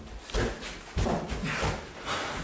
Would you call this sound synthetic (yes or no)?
no